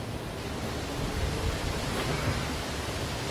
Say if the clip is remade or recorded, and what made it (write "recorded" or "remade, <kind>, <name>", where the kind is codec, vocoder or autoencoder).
recorded